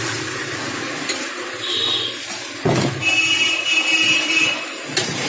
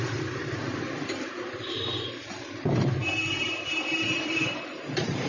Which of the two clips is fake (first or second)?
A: second